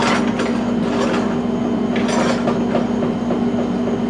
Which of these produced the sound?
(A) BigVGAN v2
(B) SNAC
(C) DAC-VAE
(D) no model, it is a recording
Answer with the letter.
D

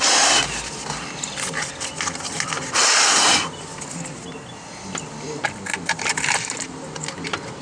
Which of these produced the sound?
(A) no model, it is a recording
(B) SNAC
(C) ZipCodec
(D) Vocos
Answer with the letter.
A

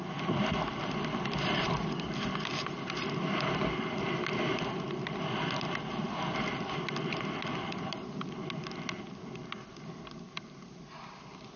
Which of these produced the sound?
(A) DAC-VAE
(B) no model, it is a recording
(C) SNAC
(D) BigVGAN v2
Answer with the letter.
B